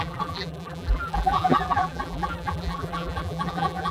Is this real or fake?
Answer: fake